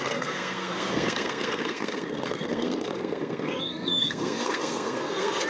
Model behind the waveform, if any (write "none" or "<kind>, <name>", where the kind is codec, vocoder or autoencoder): codec, SNAC